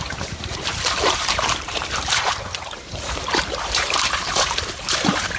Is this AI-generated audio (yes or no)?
yes